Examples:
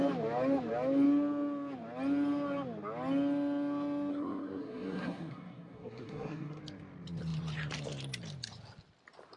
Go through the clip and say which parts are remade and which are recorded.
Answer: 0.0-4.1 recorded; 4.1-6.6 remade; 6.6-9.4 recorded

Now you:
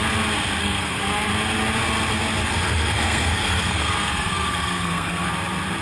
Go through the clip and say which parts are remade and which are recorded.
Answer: 0.0-0.6 recorded; 0.6-1.3 remade; 1.3-2.4 recorded; 2.4-5.3 remade; 5.3-5.8 recorded

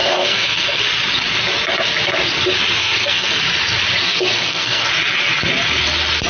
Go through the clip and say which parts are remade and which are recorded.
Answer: 0.0-0.8 remade; 0.8-2.8 recorded; 2.8-3.4 remade; 3.4-4.0 recorded; 4.0-4.8 remade; 4.8-6.3 recorded

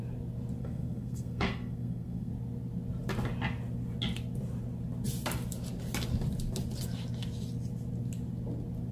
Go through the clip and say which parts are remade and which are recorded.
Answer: 0.0-0.6 recorded; 0.6-2.3 remade; 2.3-8.9 recorded

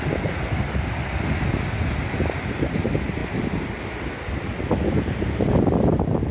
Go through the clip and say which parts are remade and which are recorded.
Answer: 0.0-6.3 recorded

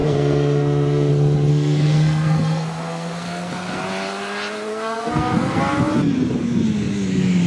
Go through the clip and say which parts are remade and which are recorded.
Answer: 0.0-1.1 remade; 1.1-1.5 recorded; 1.5-3.8 remade; 3.8-4.7 recorded; 4.7-5.6 remade; 5.6-7.5 recorded